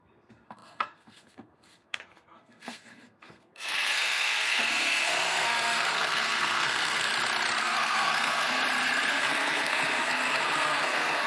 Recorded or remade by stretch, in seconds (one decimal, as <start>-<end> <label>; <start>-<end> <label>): 0.0-7.1 remade; 7.1-7.6 recorded; 7.6-8.6 remade; 8.6-9.1 recorded; 9.1-11.3 remade